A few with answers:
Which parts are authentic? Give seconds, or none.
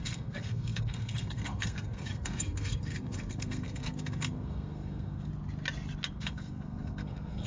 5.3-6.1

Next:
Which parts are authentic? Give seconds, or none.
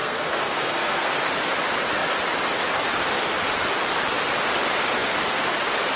1.1-6.0